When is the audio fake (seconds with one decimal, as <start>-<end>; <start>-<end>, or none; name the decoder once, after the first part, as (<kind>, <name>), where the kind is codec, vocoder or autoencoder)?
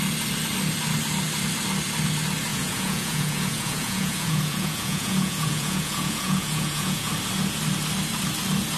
2.5-7.1 (vocoder, Vocos)